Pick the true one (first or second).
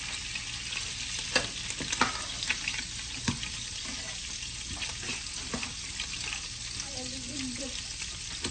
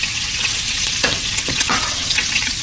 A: first